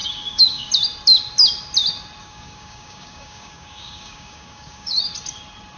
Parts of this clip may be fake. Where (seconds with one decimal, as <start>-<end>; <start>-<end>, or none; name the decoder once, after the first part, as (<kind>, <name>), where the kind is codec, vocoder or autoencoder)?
0.0-0.7 (codec, DAC); 2.2-5.0